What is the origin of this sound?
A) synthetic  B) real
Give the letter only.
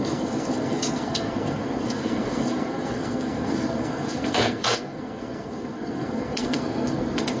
A